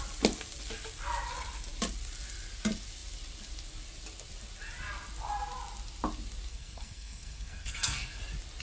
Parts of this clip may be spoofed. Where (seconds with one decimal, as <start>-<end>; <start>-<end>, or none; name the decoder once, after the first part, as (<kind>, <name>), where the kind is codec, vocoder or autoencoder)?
6.5-8.2 (codec, SNAC)